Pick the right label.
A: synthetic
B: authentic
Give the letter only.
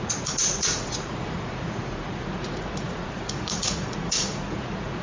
A